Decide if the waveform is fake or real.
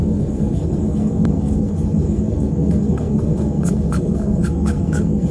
fake